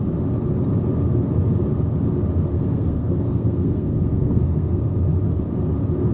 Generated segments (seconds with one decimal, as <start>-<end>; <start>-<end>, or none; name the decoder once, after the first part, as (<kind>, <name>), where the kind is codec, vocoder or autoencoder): 2.5-4.8 (codec, SNAC)